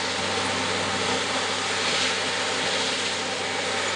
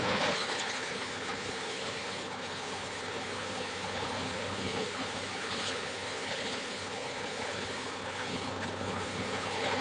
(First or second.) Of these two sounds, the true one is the first